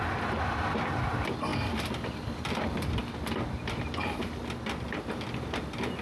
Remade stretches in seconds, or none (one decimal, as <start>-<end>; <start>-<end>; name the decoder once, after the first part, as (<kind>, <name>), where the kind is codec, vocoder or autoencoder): none